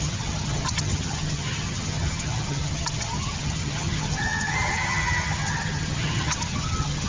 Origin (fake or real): fake